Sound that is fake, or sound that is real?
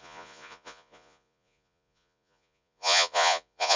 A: fake